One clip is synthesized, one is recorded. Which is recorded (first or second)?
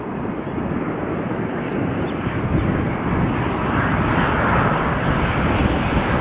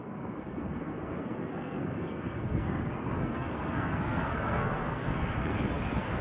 first